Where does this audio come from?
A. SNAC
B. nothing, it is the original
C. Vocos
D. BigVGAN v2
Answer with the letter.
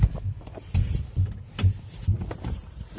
D